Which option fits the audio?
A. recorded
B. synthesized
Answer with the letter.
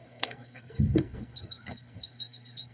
B